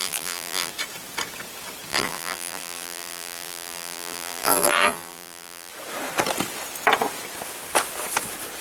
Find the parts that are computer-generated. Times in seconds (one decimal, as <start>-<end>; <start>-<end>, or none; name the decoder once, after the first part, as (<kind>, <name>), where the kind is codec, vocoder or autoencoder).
0.0-0.7 (vocoder, BigVGAN v2); 1.9-5.7